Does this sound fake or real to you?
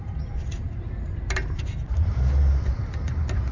real